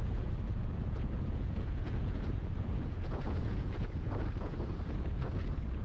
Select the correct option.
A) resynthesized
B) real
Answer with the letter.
A